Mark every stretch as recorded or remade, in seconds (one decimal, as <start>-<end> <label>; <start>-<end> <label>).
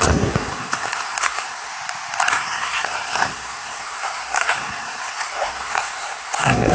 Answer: 0.0-1.7 remade; 1.7-2.3 recorded; 2.3-6.7 remade